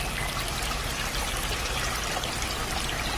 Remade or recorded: recorded